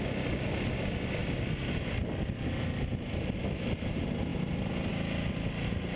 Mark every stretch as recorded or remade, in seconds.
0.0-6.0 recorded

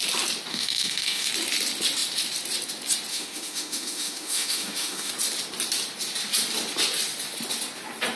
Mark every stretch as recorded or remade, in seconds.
0.0-0.5 recorded; 0.5-1.3 remade; 1.3-3.1 recorded; 3.1-5.1 remade; 5.1-8.2 recorded

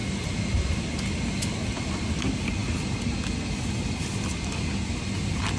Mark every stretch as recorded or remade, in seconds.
0.0-5.6 recorded

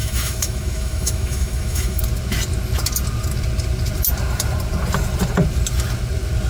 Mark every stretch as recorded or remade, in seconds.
0.0-2.0 remade; 2.0-6.5 recorded

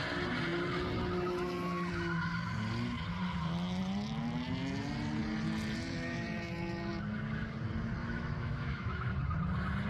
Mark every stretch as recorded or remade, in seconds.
0.0-8.0 recorded; 8.0-9.1 remade; 9.1-9.9 recorded

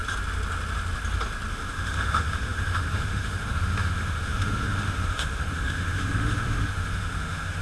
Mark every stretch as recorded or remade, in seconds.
0.0-1.5 recorded; 1.5-7.6 remade